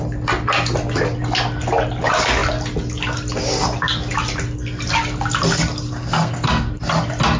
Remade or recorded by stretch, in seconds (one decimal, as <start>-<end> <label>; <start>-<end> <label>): 0.0-5.9 recorded; 5.9-6.7 remade; 6.7-7.4 recorded